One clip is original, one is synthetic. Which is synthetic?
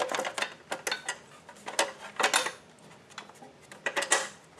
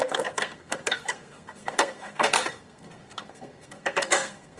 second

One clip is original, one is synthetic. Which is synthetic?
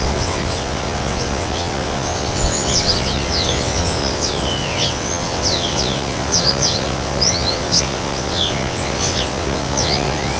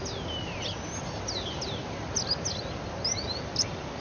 first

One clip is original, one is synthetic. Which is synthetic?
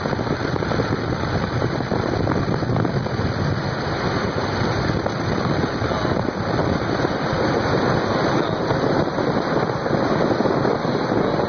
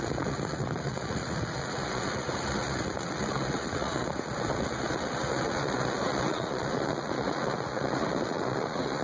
second